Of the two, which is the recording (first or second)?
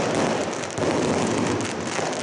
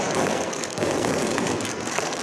first